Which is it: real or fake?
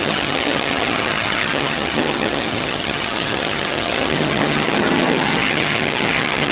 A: fake